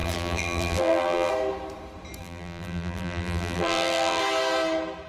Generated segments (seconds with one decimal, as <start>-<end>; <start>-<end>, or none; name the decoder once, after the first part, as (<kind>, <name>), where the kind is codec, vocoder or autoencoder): 0.0-1.3 (vocoder, BigVGAN v2); 2.2-4.2